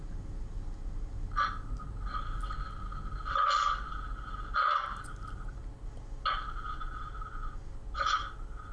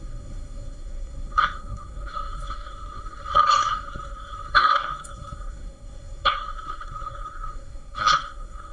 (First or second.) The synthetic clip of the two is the second